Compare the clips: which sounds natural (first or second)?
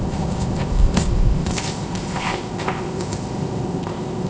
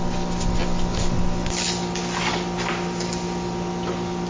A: second